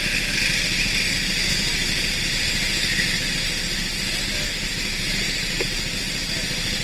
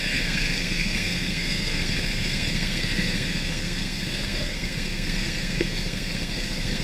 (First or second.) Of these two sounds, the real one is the first